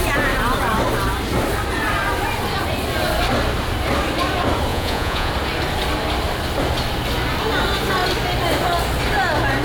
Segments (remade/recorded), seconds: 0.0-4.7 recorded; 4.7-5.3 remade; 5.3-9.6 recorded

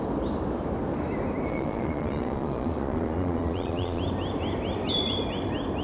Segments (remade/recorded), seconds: 0.0-1.5 recorded; 1.5-4.0 remade; 4.0-5.8 recorded

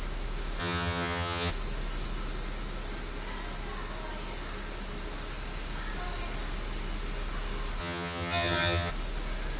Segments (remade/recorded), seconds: 0.0-0.6 recorded; 0.6-1.5 remade; 1.5-7.8 recorded; 7.8-8.9 remade; 8.9-9.6 recorded